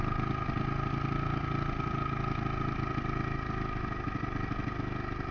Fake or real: real